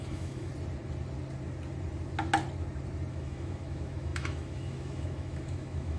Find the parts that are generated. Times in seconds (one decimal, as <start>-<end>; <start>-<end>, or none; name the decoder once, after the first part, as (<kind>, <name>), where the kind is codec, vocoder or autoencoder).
0.0-0.5 (autoencoder, DAC-VAE); 3.1-6.0

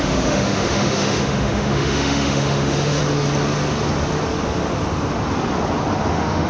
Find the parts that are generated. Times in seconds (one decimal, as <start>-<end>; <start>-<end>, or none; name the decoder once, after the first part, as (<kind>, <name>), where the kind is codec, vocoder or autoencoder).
0.0-3.0 (autoencoder, DAC-VAE); 6.1-6.5

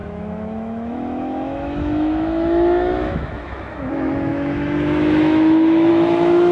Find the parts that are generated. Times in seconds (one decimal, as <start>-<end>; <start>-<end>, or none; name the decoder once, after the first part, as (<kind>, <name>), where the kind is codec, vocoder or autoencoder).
0.0-6.5 (autoencoder, DAC-VAE)

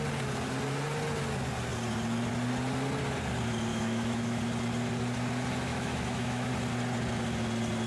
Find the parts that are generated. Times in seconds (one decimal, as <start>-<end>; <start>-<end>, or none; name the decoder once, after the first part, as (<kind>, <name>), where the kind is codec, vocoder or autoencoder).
3.7-4.4 (autoencoder, DAC-VAE); 5.7-6.5

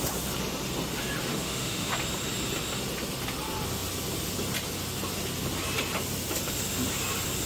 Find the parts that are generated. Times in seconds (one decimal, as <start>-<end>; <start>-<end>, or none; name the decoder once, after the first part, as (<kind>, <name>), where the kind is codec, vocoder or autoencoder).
1.3-1.9 (autoencoder, DAC-VAE)